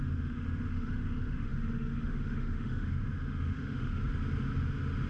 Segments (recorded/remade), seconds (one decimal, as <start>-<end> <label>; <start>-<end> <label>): 0.0-4.0 remade; 4.0-5.1 recorded